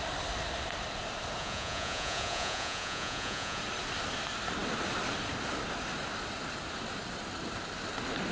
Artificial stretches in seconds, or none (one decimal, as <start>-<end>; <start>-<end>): 1.4-3.6